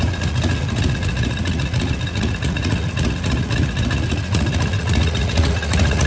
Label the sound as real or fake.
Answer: fake